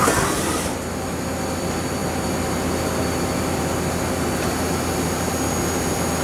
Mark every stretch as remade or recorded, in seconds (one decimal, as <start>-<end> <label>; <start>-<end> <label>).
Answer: 0.0-6.2 recorded